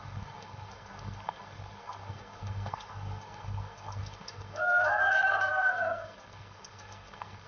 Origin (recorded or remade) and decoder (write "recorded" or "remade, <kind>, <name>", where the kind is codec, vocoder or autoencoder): remade, codec, SNAC